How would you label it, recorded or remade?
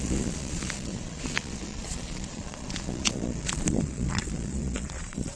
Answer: remade